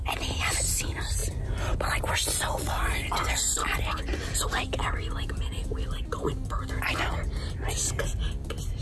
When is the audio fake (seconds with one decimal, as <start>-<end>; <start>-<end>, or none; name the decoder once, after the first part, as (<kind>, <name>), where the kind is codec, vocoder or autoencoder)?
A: none